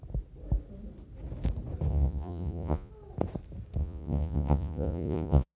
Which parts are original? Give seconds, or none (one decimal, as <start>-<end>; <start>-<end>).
0.0-1.9; 2.9-3.8